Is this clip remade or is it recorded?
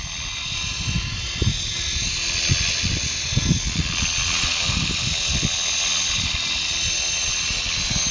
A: recorded